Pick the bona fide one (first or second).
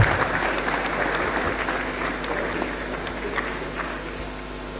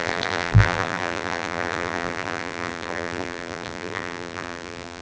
first